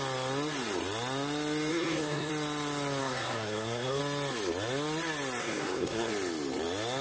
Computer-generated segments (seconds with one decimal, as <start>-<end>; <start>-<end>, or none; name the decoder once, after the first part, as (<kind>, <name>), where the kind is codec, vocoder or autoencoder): 1.7-2.3 (codec, SNAC); 3.0-4.0; 5.4-6.1